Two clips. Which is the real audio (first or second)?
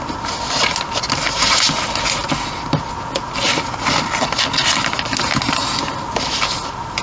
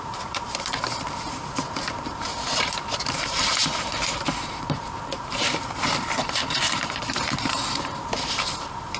first